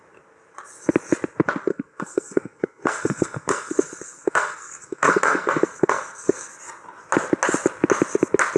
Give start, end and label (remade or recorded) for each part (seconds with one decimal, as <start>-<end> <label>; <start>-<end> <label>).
0.0-1.7 recorded; 1.7-6.5 remade; 6.5-8.6 recorded